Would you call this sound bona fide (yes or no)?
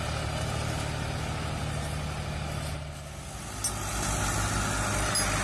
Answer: yes